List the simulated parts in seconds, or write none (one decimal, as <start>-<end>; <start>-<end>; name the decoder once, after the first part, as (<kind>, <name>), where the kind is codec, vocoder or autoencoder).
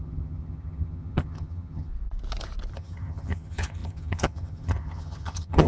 0.0-1.9 (vocoder, HiFi-GAN); 2.7-5.7